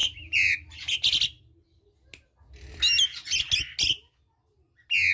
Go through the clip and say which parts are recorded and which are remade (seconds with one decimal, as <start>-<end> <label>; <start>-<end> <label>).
0.0-5.1 recorded